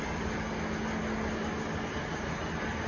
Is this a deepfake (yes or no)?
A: no